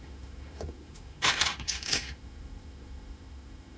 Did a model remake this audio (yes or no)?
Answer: yes